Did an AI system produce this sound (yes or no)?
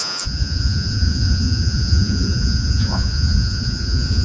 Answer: yes